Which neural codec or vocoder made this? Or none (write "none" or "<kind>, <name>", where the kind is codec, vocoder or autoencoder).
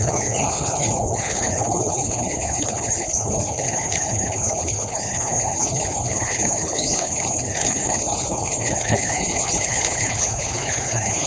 codec, HILCodec